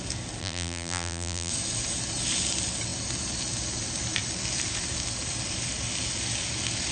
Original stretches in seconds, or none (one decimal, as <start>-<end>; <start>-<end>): 0.0-0.4; 1.5-6.9